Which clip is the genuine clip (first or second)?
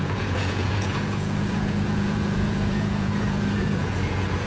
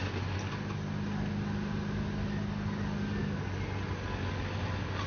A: second